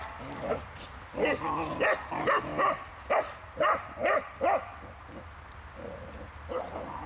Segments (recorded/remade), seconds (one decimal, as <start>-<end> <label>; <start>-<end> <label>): 0.0-7.1 recorded